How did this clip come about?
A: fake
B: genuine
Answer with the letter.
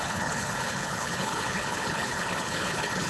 A